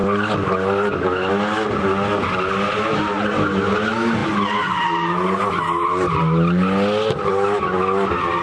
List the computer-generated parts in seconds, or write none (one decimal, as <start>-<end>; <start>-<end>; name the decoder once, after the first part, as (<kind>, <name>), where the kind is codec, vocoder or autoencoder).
none